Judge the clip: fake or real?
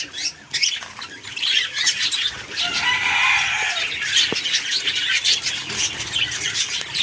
real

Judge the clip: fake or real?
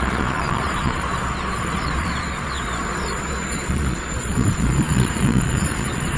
fake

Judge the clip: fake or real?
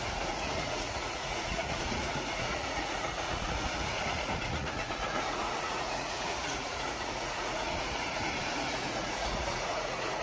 fake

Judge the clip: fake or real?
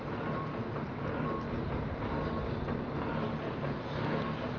real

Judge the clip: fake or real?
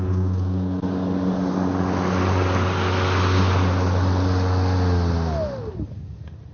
real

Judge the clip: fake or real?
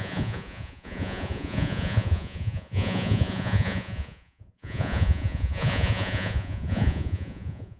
fake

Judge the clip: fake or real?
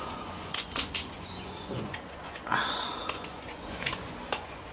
fake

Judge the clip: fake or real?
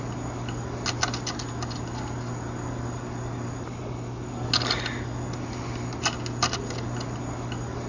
real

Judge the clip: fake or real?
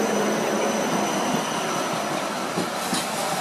real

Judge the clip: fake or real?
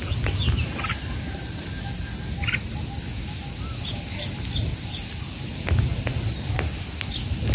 real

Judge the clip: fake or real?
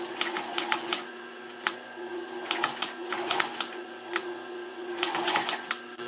fake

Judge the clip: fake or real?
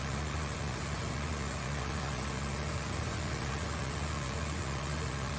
fake